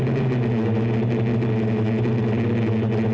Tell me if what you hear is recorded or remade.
recorded